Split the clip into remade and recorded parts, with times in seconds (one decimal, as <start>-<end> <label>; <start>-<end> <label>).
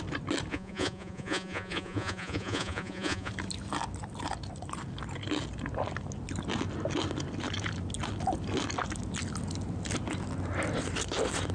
0.0-0.5 recorded; 0.5-3.3 remade; 3.3-11.5 recorded